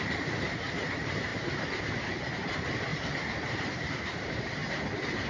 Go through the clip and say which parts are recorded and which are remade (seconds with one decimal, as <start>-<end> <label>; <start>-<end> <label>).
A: 0.0-2.9 remade; 2.9-3.5 recorded; 3.5-4.6 remade; 4.6-5.3 recorded